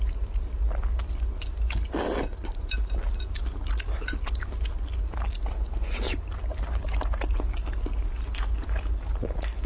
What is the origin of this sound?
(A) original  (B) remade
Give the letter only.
A